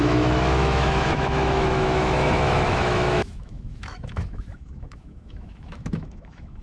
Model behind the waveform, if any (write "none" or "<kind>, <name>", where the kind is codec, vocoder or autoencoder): autoencoder, DAC-VAE